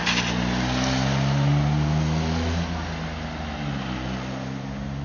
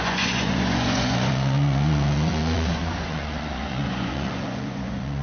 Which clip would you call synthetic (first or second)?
second